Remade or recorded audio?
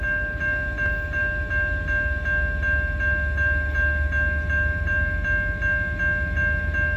recorded